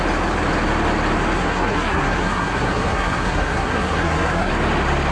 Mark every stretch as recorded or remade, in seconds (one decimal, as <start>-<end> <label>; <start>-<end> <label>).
0.0-1.4 recorded; 1.4-4.5 remade; 4.5-5.1 recorded